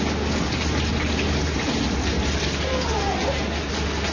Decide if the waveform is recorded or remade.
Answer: recorded